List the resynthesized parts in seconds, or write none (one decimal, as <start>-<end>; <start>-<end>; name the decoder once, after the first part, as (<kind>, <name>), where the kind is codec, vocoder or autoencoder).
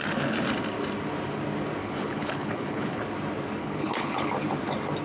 1.8-3.0 (codec, HILCodec); 3.6-4.3